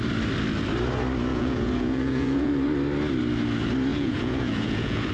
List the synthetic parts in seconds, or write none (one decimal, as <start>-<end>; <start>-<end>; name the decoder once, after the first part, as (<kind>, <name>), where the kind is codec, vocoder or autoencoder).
1.3-2.5 (vocoder, Vocos); 3.9-5.1